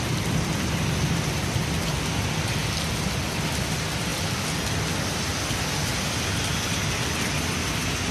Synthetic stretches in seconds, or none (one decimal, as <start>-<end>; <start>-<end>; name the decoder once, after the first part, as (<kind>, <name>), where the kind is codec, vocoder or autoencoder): none